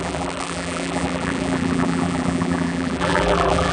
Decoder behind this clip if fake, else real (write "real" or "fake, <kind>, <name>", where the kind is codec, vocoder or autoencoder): fake, vocoder, BigVGAN v2